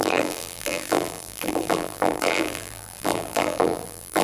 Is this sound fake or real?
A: fake